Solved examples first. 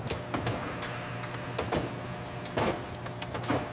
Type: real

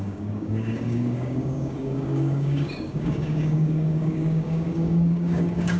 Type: fake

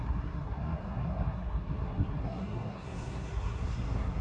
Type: fake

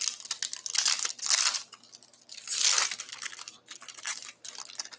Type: real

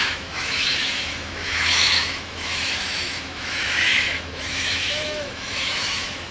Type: fake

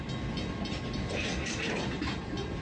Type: real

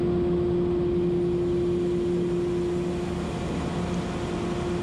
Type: real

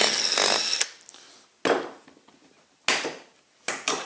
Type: real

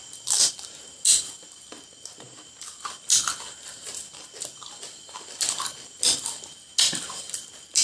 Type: real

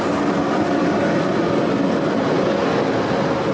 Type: real